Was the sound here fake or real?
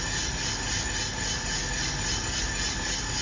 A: real